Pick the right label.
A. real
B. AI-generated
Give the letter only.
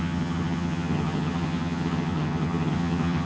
B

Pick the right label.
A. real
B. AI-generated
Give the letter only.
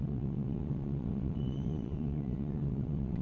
B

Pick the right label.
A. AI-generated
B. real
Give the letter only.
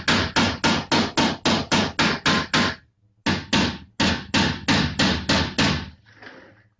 B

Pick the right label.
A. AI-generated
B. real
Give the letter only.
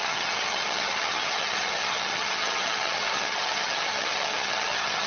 A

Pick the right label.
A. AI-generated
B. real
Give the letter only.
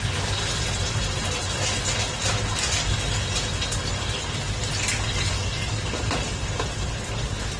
B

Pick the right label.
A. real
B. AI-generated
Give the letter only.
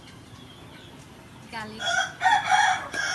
A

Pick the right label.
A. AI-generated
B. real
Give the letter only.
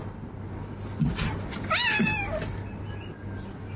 B